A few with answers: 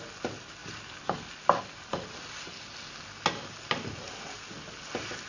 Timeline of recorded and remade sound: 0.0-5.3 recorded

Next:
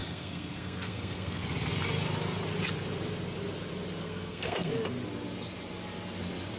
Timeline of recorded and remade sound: 0.0-1.4 remade; 1.4-4.0 recorded; 4.0-4.7 remade; 4.7-6.6 recorded

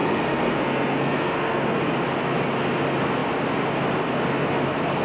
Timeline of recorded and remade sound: 0.0-1.8 remade; 1.8-5.0 recorded